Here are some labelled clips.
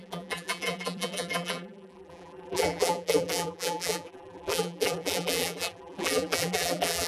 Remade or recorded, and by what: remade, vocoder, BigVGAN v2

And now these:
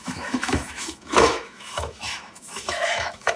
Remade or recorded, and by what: remade, autoencoder, DAC-VAE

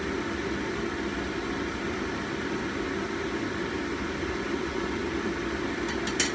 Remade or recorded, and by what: recorded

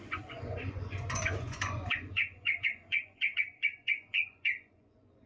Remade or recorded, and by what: remade, vocoder, Vocos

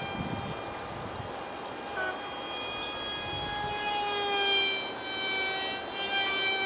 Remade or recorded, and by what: recorded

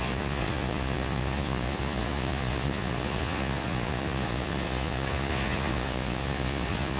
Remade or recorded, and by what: remade, vocoder, Vocos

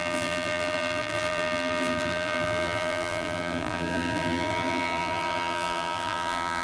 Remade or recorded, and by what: remade, vocoder, BigVGAN v2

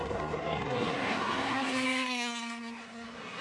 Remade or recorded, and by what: remade, codec, SNAC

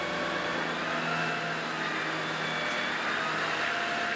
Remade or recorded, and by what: recorded